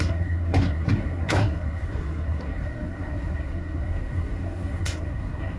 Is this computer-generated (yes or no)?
yes